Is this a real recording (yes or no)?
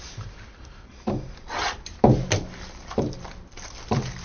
no